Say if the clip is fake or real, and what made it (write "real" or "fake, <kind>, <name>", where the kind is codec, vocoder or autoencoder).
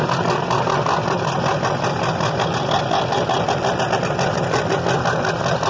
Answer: real